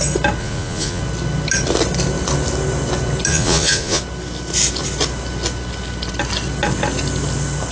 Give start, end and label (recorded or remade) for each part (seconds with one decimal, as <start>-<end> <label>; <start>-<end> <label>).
0.0-0.4 recorded; 0.4-1.0 remade; 1.0-3.3 recorded; 3.3-4.0 remade; 4.0-7.7 recorded